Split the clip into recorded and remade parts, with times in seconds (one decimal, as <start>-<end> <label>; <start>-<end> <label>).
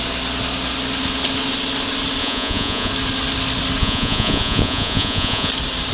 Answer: 0.0-2.2 recorded; 2.2-2.9 remade; 2.9-3.8 recorded; 3.8-5.5 remade; 5.5-5.9 recorded